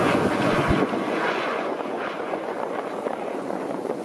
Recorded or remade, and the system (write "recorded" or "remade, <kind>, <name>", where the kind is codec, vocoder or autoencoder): remade, vocoder, Vocos